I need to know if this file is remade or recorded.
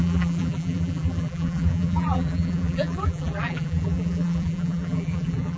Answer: remade